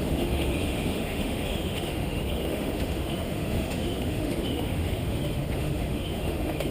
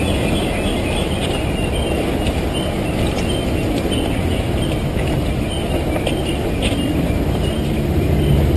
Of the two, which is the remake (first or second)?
first